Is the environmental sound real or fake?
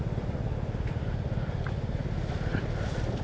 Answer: real